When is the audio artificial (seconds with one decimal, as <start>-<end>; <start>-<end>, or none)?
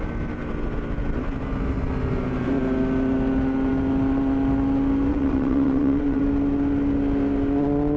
5.1-6.2